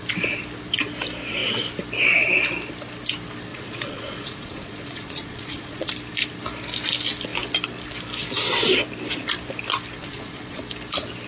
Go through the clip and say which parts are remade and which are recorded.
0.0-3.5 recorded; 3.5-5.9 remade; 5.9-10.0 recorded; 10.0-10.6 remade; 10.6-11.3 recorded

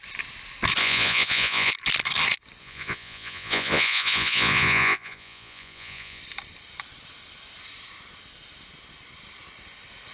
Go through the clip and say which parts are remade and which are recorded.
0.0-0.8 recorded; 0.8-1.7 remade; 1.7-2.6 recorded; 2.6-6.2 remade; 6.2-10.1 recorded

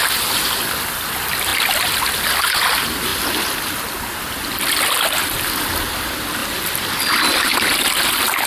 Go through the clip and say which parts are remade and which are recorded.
0.0-8.5 recorded

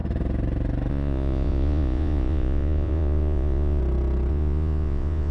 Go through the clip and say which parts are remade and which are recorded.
0.0-0.9 recorded; 0.9-3.8 remade; 3.8-4.3 recorded; 4.3-5.3 remade